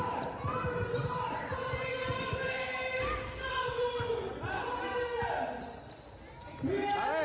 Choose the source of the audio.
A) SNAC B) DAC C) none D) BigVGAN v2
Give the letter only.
C